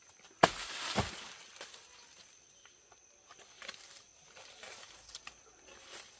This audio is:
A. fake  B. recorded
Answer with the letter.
B